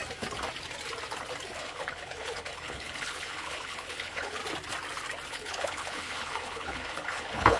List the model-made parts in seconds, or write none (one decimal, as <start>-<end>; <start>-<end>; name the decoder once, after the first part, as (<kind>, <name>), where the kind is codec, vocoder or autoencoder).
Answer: 1.6-4.4 (codec, HILCodec); 5.3-7.6